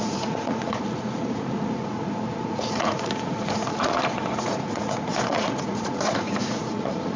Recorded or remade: remade